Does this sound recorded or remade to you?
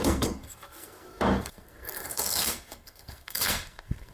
remade